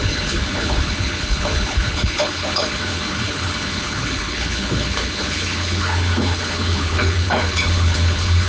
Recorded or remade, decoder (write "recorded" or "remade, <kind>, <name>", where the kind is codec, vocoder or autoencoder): remade, codec, HILCodec